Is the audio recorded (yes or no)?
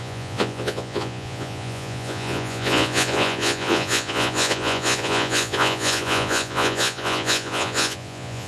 no